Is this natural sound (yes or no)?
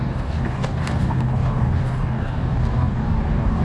no